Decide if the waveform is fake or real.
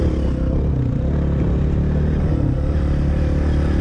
real